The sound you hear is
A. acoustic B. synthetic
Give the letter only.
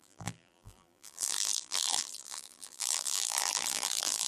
B